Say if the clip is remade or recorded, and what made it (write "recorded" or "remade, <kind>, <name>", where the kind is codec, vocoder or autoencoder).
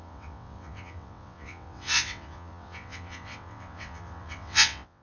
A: remade, vocoder, WaveNeXt